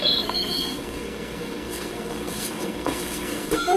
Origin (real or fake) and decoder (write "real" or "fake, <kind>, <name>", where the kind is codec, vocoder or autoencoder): fake, codec, SNAC